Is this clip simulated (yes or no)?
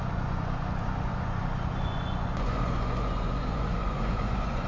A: yes